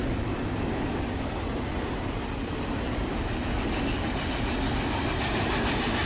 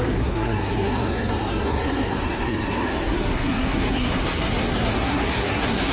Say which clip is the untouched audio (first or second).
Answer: first